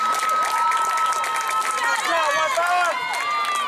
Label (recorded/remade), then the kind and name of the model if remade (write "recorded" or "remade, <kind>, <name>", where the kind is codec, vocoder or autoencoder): recorded